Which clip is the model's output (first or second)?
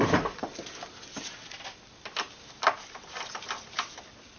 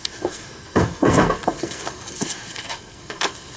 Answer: second